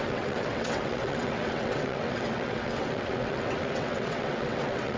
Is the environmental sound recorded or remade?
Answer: remade